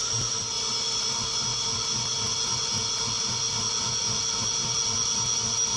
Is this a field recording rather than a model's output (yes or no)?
yes